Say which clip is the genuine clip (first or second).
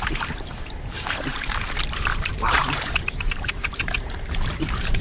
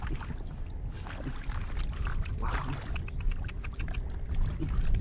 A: second